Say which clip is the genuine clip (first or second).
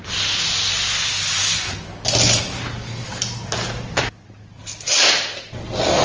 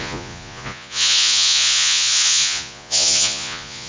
first